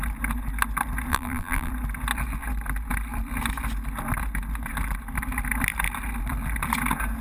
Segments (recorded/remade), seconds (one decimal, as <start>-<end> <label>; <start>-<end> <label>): 0.0-1.1 recorded; 1.1-1.7 remade; 1.7-7.2 recorded